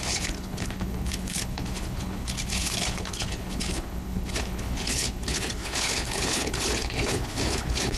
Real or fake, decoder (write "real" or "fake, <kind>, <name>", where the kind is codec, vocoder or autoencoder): fake, codec, HILCodec